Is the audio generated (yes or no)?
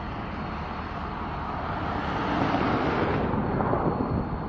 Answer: no